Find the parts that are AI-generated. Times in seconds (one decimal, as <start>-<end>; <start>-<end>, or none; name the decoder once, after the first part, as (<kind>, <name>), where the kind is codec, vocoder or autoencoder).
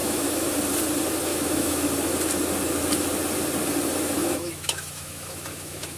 0.0-0.5 (autoencoder, DAC-VAE); 1.3-1.9; 4.2-6.0